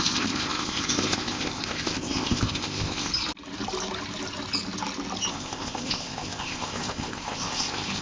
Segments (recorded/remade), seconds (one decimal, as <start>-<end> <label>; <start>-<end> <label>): 0.0-3.1 remade; 3.1-5.3 recorded; 5.3-8.0 remade